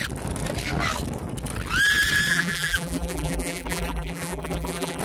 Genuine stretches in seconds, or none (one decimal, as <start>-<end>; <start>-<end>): 0.0-2.3